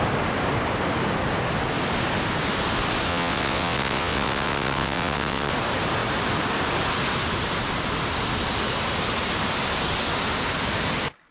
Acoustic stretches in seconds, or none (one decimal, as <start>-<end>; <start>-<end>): 0.0-3.1; 5.5-11.3